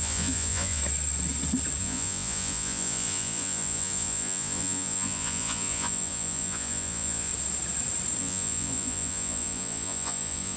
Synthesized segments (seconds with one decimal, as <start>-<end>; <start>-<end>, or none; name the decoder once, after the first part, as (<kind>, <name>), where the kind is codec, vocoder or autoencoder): 0.0-0.8 (vocoder, Vocos); 1.8-7.3; 8.2-10.6